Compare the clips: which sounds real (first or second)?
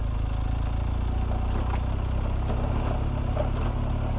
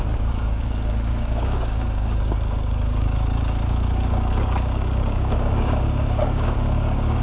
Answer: first